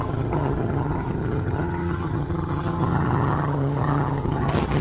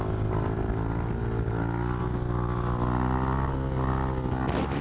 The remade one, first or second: first